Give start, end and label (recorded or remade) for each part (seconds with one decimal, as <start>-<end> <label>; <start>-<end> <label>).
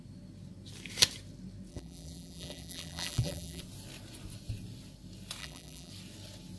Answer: 0.0-1.7 recorded; 1.7-3.6 remade; 3.6-5.4 recorded; 5.4-5.9 remade; 5.9-6.6 recorded